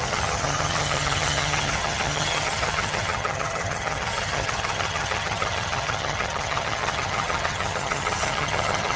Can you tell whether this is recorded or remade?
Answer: remade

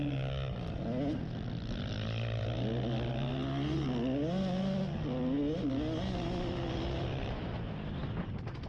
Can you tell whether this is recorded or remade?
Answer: recorded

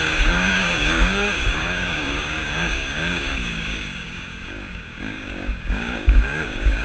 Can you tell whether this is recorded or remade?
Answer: remade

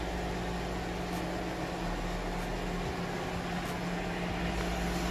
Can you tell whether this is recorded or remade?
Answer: recorded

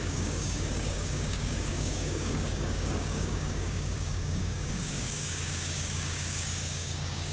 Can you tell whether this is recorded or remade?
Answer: remade